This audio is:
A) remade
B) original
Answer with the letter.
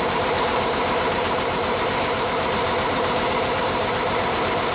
A